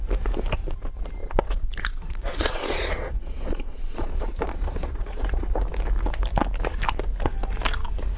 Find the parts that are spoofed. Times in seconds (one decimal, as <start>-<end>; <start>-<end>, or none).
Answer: 1.2-5.5

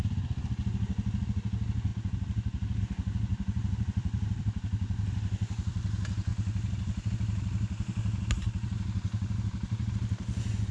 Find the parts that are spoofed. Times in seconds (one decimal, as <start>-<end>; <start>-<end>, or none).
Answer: 1.9-2.8; 3.3-4.6

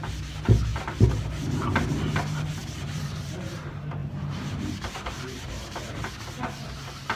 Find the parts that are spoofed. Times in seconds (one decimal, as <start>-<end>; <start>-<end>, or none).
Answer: 0.7-1.3; 2.6-3.6; 4.0-6.1

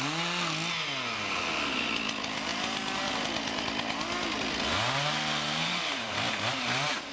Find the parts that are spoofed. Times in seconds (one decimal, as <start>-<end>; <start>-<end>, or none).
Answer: 2.5-7.1